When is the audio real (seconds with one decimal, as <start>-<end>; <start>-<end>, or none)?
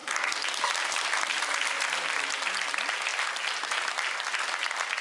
0.0-5.0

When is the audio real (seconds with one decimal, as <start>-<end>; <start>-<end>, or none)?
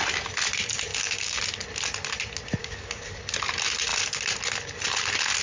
0.0-0.9; 1.4-2.6; 3.2-5.4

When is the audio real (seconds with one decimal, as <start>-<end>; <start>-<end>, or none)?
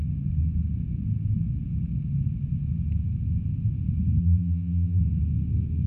0.0-4.2; 5.0-5.9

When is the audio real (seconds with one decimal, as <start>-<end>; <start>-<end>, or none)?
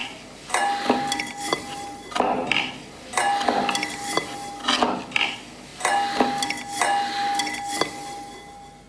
0.0-8.9